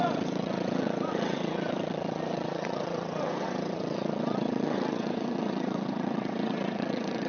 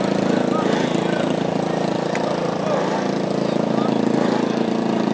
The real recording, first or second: second